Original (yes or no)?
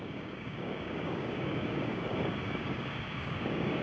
no